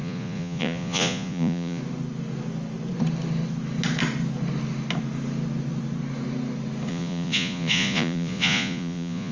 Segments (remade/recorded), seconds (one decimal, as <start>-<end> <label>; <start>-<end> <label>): 0.0-1.8 remade; 1.8-6.9 recorded; 6.9-9.3 remade